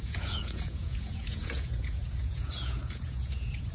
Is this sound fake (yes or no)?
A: yes